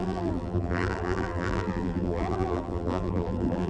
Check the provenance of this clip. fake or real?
fake